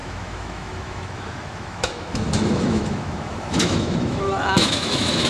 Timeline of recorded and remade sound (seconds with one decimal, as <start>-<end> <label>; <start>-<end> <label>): 0.0-5.3 remade